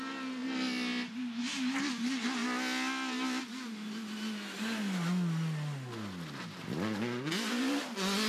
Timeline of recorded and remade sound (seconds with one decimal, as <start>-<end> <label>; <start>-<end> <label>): 0.0-8.3 recorded

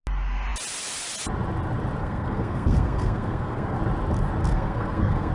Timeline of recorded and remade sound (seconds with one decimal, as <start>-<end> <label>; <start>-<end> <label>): 0.0-2.0 recorded; 2.0-3.8 remade; 3.8-4.4 recorded; 4.4-5.3 remade